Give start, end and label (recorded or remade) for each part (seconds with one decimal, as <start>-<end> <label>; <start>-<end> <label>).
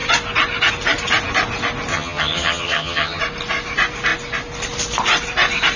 0.0-1.9 recorded; 1.9-3.2 remade; 3.2-5.8 recorded